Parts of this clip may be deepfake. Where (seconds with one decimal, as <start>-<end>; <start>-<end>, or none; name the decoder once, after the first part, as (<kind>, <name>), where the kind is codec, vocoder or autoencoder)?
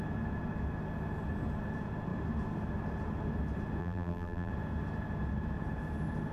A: 3.8-4.5 (vocoder, BigVGAN v2)